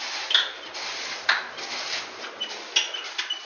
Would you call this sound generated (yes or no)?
no